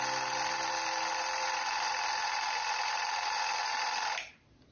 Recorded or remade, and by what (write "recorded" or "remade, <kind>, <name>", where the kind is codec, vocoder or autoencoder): recorded